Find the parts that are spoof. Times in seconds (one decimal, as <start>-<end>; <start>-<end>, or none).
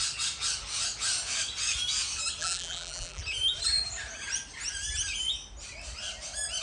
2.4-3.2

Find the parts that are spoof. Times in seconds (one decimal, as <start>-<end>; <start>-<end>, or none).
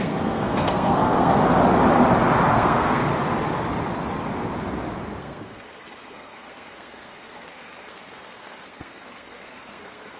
0.0-1.4; 2.5-3.1; 5.2-10.2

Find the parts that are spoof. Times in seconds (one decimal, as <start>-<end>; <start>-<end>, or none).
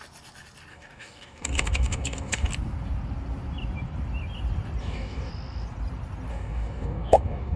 0.7-2.5; 4.8-5.3; 6.3-7.6